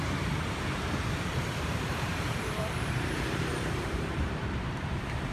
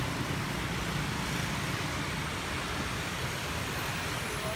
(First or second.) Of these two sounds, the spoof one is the first